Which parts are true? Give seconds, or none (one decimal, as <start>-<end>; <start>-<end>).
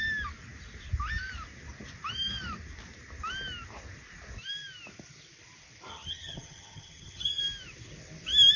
0.0-5.9; 7.4-8.6